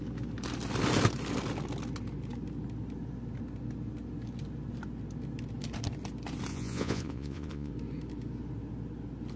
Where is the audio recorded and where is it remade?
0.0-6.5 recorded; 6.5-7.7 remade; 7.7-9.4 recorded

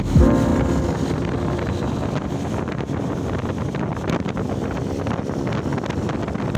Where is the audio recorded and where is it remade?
0.0-6.6 recorded

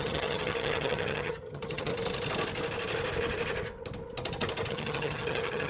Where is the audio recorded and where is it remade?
0.0-1.9 remade; 1.9-4.7 recorded; 4.7-5.7 remade

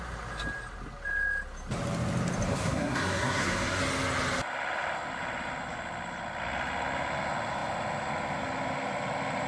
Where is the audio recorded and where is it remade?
0.0-2.5 recorded; 2.5-3.8 remade; 3.8-9.5 recorded

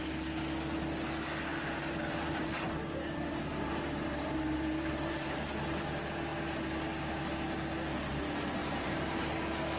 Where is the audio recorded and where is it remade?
0.0-1.5 recorded; 1.5-5.4 remade; 5.4-8.6 recorded; 8.6-9.4 remade; 9.4-9.8 recorded

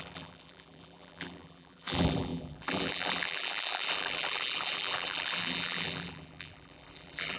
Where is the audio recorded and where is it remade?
0.0-7.4 remade